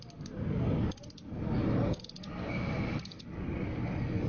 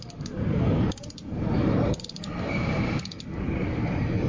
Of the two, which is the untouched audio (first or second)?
first